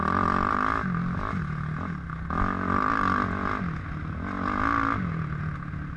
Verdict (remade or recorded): recorded